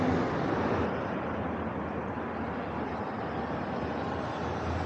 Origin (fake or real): real